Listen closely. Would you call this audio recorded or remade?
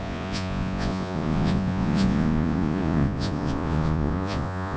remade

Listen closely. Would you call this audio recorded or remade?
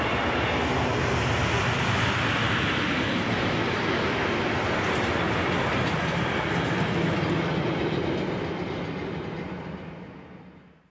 recorded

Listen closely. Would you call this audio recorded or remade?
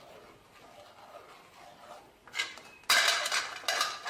recorded